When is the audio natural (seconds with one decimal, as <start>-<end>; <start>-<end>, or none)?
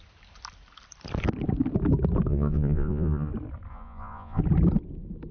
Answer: 0.0-2.3; 3.3-3.7; 4.4-5.3